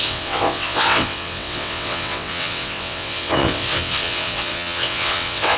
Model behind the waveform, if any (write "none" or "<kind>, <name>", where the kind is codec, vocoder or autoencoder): vocoder, WaveNeXt